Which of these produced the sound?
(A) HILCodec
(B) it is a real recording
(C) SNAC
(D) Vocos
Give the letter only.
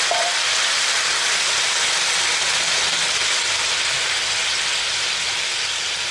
B